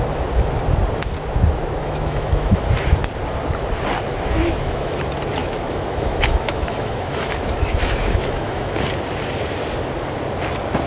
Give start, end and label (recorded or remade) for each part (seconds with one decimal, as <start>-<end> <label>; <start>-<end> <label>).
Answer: 0.0-1.8 recorded; 1.8-2.7 remade; 2.7-4.1 recorded; 4.1-5.0 remade; 5.0-5.4 recorded; 5.4-8.7 remade; 8.7-10.9 recorded